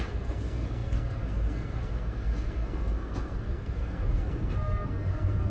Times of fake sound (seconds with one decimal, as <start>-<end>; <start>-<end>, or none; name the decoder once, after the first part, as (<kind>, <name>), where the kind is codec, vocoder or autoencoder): 0.0-5.5 (codec, SNAC)